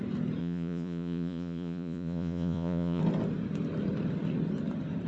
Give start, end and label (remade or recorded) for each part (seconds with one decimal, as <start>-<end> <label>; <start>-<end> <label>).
0.0-0.4 recorded; 0.4-3.0 remade; 3.0-5.1 recorded